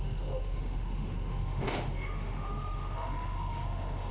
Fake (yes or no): yes